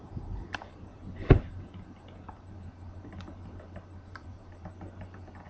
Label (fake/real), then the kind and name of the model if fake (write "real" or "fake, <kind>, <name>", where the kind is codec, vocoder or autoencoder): fake, vocoder, BigVGAN v2